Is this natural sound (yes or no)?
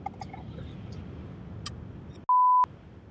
yes